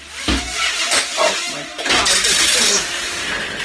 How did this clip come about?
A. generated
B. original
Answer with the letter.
B